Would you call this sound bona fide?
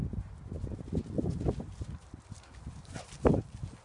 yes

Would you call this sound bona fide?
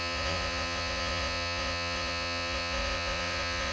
no